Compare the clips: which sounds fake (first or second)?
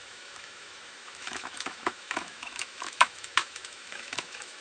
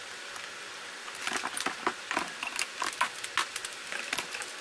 first